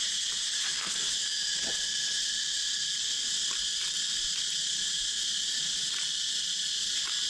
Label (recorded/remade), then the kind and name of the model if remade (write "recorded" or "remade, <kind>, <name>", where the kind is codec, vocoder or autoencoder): recorded